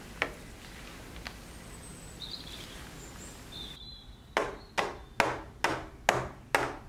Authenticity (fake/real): real